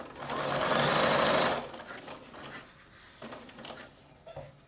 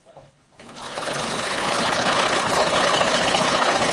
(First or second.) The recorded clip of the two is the first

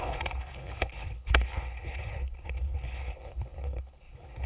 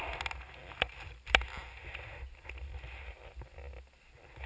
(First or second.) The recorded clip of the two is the second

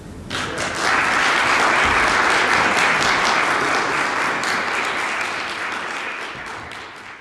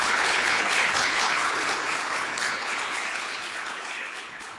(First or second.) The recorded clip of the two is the first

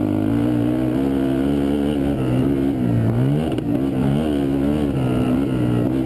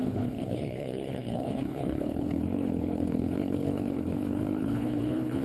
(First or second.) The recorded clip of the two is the first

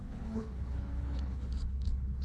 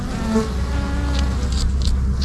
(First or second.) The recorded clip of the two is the second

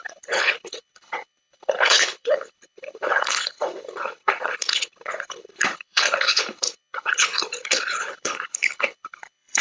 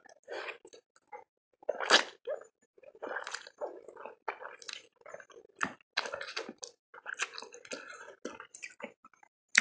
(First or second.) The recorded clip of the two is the second